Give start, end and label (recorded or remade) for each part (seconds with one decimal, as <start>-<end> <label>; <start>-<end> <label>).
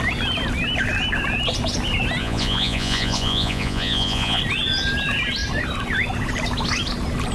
0.0-2.2 recorded; 2.2-4.4 remade; 4.4-7.3 recorded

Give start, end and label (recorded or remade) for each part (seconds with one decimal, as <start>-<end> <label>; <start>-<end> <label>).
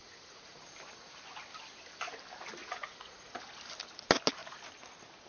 0.0-0.6 remade; 0.6-2.6 recorded; 2.6-3.4 remade; 3.4-5.3 recorded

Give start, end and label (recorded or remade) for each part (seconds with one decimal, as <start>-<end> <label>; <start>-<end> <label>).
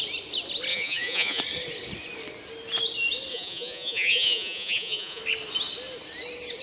0.0-0.7 recorded; 0.7-1.4 remade; 1.4-3.3 recorded; 3.3-5.2 remade; 5.2-6.6 recorded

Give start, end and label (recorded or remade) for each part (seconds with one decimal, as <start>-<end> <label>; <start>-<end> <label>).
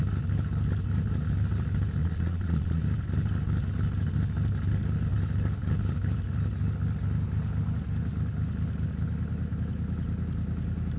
0.0-2.0 recorded; 2.0-2.8 remade; 2.8-11.0 recorded